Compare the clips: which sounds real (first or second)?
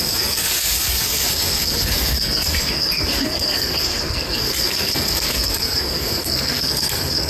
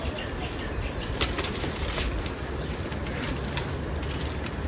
second